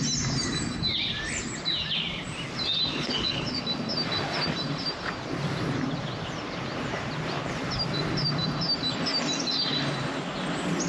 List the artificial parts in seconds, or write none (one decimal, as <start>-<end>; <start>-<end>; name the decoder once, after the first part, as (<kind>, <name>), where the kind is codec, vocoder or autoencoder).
2.9-3.6 (codec, HILCodec)